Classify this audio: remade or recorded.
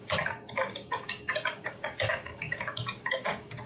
remade